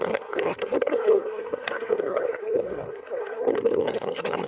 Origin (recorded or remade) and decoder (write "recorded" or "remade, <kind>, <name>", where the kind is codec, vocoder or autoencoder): remade, codec, SNAC